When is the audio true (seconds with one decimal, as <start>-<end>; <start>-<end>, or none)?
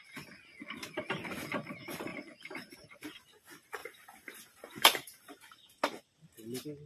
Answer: 0.0-2.1; 3.2-3.8; 5.8-6.9